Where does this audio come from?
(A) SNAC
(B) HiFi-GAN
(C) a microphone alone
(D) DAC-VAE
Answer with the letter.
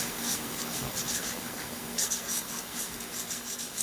A